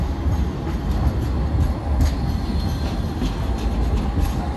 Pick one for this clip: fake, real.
real